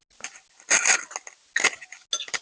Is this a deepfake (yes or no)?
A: no